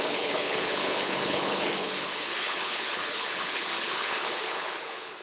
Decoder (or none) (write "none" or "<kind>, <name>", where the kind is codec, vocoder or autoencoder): codec, HILCodec